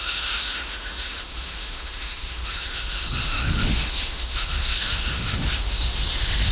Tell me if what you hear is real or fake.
fake